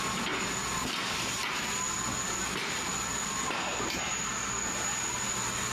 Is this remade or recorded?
recorded